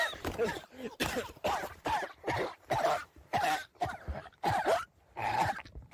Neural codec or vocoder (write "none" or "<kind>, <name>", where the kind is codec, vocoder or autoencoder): vocoder, BigVGAN v2